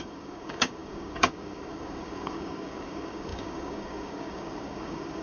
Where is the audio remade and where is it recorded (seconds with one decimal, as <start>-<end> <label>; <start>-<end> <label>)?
0.0-5.2 remade

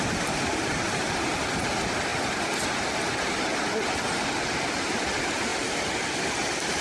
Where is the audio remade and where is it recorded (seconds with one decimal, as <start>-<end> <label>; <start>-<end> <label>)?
0.0-6.8 recorded